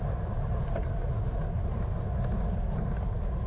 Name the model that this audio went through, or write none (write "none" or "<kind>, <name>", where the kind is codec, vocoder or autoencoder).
none